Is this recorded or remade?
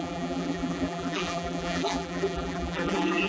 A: remade